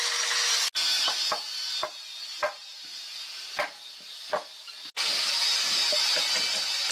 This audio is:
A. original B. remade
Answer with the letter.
A